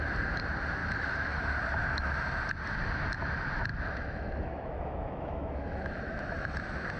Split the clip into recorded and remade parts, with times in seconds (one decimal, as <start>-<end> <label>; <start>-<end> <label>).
0.0-0.8 recorded; 0.8-1.4 remade; 1.4-3.7 recorded; 3.7-6.6 remade; 6.6-7.0 recorded